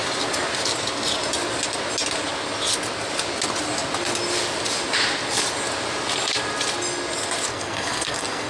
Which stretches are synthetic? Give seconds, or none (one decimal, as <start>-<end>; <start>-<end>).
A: 7.5-8.5